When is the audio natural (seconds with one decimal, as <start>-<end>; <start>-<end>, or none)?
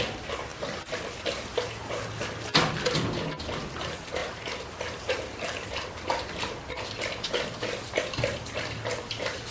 0.0-9.5